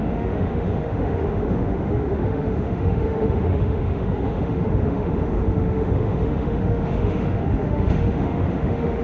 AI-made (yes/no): yes